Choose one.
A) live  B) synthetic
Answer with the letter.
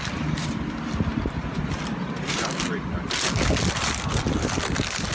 B